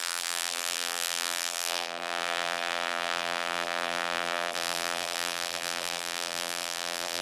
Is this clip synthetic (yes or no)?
yes